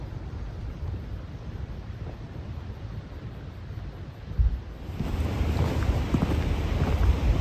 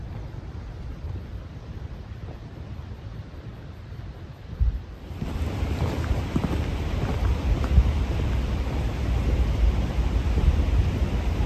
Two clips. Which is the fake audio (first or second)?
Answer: second